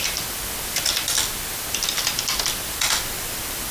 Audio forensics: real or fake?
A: real